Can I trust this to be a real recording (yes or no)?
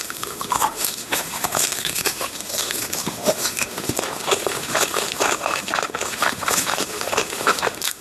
no